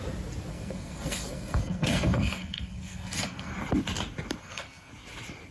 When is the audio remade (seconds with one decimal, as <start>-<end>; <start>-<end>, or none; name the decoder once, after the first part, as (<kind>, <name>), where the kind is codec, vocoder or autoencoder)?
0.5-3.5 (codec, SNAC); 4.4-4.9